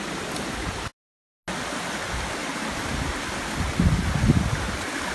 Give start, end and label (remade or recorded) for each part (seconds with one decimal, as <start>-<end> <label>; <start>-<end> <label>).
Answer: 0.0-5.1 recorded